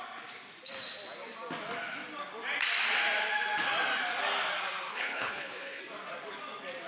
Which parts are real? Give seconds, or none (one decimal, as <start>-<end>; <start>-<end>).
0.0-4.9; 5.8-6.9